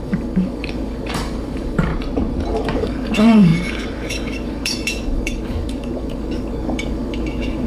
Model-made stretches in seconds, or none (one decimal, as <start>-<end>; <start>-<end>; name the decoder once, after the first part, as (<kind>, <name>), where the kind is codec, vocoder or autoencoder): 0.0-1.9 (codec, DAC); 2.5-7.7